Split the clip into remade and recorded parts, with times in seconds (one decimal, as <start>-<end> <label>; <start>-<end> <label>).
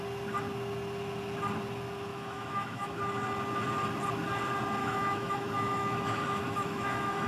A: 0.0-2.1 recorded; 2.1-3.0 remade; 3.0-4.8 recorded; 4.8-7.3 remade